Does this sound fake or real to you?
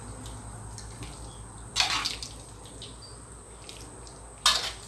real